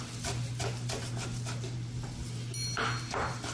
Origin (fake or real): real